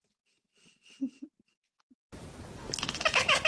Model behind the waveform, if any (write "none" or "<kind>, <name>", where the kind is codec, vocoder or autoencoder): none